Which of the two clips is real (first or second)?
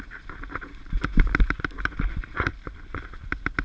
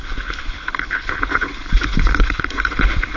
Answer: first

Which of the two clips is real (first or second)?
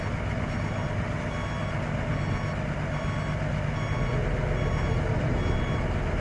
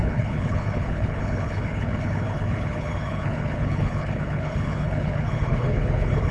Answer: first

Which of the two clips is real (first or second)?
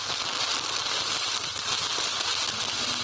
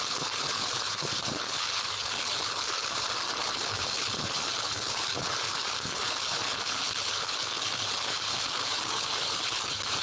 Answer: first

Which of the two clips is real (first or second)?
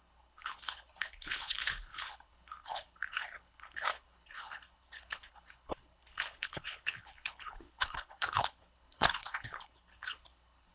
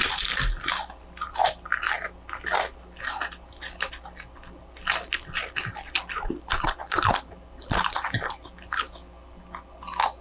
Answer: second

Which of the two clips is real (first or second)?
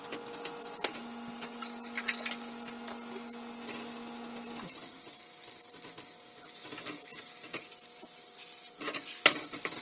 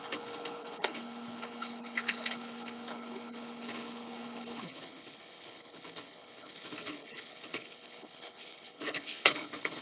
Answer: first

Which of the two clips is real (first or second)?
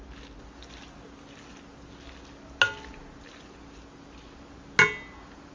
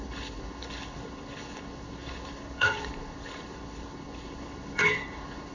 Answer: first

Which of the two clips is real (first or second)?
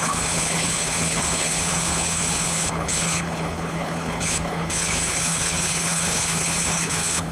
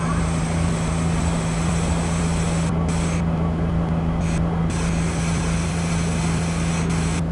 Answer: second